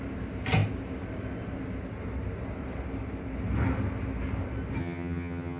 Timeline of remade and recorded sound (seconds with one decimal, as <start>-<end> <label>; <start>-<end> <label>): 0.0-4.8 recorded; 4.8-5.6 remade